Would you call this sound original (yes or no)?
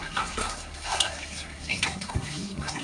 no